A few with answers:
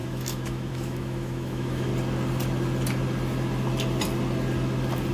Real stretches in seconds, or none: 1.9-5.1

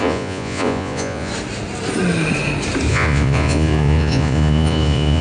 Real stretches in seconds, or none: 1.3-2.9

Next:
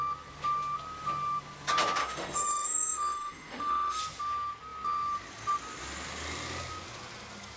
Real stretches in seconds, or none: 0.0-2.0; 4.0-7.6

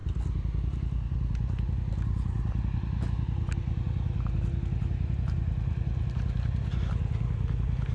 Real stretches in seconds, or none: 0.0-7.9

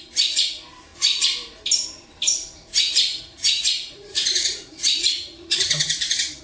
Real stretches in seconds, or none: 0.0-3.1; 5.5-6.4

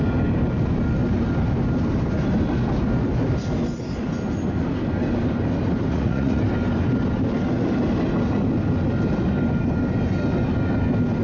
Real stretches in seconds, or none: 0.0-5.9; 6.4-11.2

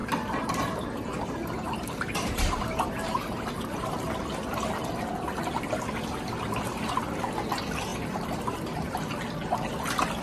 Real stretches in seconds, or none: 4.1-7.9; 9.1-10.2